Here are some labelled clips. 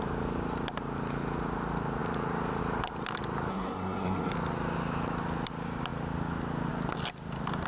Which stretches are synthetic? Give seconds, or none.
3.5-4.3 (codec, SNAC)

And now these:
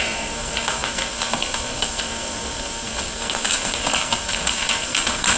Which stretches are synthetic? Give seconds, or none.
0.0-5.4 (codec, SNAC)

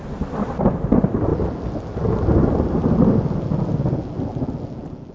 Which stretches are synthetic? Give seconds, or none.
none

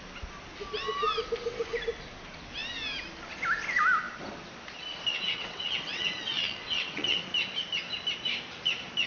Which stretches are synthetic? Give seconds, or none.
5.1-7.2 (vocoder, WaveNeXt)

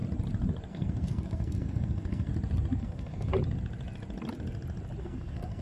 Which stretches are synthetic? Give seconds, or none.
0.7-2.3 (codec, SNAC); 2.8-3.3; 5.0-5.6

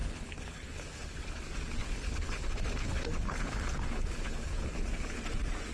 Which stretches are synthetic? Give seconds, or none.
0.0-1.4 (codec, HILCodec); 1.8-5.2

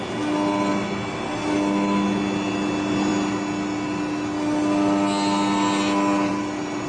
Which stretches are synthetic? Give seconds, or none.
none